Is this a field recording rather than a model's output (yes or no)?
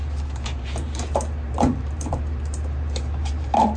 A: no